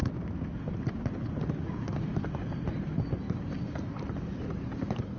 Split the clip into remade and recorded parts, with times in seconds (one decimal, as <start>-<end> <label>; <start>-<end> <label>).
0.0-1.6 recorded; 1.6-2.1 remade; 2.1-5.2 recorded